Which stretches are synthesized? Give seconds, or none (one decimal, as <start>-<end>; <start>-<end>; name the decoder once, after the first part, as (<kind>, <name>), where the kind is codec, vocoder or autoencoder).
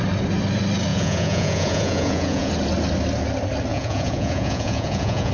0.9-2.5 (vocoder, Vocos); 3.7-5.3